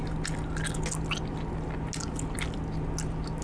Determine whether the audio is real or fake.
real